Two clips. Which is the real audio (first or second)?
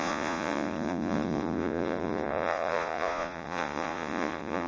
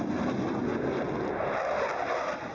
second